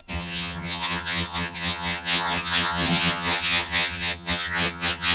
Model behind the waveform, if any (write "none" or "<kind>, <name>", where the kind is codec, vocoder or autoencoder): vocoder, HiFi-GAN